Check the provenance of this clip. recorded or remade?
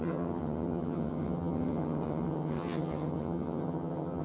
remade